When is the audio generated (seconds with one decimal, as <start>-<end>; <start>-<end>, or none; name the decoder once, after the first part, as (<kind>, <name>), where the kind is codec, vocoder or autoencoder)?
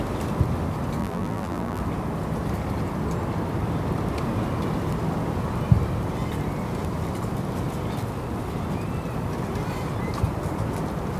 1.0-1.8 (vocoder, BigVGAN v2)